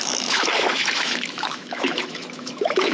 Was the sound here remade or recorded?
remade